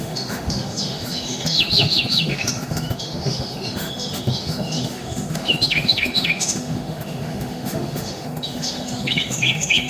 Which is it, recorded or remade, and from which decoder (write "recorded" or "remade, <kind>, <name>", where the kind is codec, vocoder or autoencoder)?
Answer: remade, autoencoder, DAC-VAE